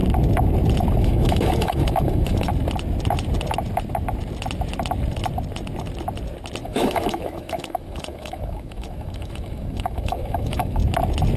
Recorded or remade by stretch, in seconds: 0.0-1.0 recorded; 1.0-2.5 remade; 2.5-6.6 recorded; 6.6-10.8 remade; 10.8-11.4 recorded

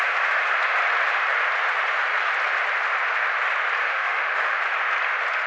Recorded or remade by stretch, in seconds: 0.0-3.8 recorded; 3.8-4.6 remade; 4.6-5.5 recorded

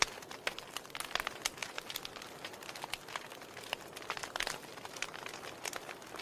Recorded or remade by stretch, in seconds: 0.0-6.2 recorded

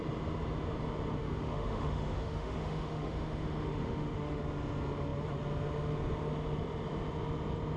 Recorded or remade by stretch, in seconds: 0.0-1.2 recorded; 1.2-4.4 remade; 4.4-7.8 recorded

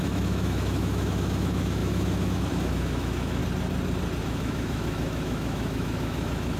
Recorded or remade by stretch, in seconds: 0.0-3.4 remade; 3.4-4.2 recorded; 4.2-6.6 remade

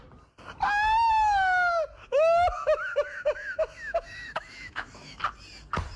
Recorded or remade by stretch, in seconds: 0.0-2.1 recorded; 2.1-5.2 remade; 5.2-6.0 recorded

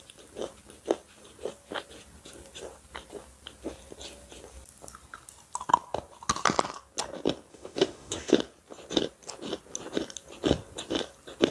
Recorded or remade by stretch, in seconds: 0.0-7.5 recorded; 7.5-8.4 remade; 8.4-11.5 recorded